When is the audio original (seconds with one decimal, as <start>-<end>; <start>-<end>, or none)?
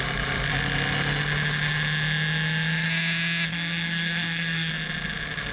0.0-3.5; 4.7-5.5